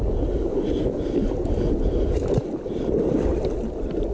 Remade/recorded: recorded